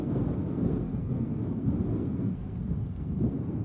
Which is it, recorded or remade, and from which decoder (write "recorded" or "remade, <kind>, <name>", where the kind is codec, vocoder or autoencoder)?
remade, codec, SNAC